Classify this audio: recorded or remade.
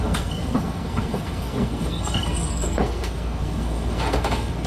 remade